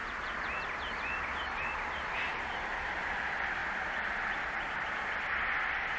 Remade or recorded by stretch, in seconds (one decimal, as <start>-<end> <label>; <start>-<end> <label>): 0.0-6.0 recorded